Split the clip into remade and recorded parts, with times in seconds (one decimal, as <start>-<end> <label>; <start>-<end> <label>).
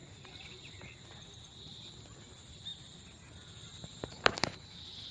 0.0-5.1 recorded